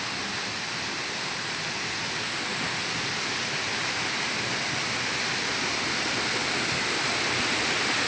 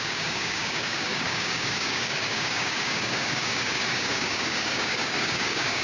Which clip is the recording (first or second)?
first